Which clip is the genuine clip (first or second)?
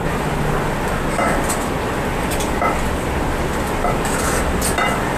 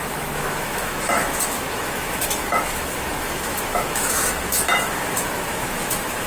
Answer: first